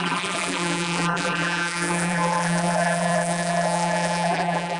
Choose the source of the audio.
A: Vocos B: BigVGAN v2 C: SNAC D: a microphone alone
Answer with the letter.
B